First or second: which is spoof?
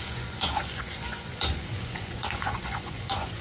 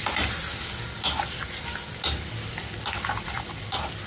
first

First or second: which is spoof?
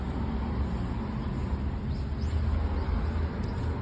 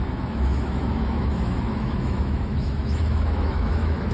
second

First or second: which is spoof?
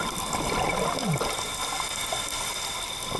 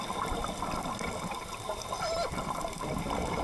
second